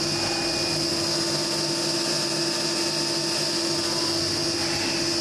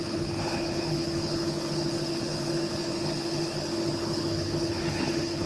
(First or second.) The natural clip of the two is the first